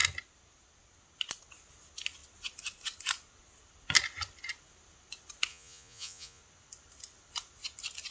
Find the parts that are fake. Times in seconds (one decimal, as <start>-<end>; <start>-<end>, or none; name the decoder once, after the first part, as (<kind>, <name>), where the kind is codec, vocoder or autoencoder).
5.5-6.4 (vocoder, Vocos)